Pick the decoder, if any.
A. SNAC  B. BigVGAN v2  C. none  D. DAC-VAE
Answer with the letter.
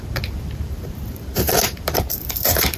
B